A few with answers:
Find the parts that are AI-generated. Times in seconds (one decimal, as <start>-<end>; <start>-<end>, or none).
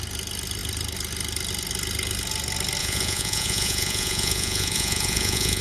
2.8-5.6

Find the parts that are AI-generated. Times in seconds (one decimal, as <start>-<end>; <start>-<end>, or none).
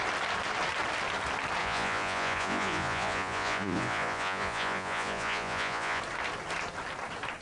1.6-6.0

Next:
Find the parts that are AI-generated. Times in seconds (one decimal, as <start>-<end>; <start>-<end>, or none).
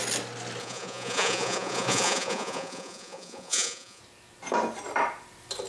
0.6-4.0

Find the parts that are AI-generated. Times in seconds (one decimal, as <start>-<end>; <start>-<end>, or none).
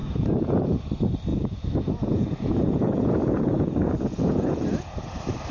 0.0-0.8; 1.3-4.6